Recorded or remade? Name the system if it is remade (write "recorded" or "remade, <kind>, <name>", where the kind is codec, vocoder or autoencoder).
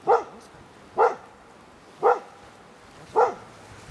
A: recorded